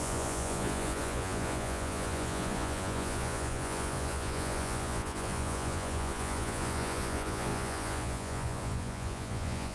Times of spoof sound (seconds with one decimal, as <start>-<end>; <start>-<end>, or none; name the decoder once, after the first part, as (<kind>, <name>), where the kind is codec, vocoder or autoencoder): 0.0-9.7 (vocoder, Vocos)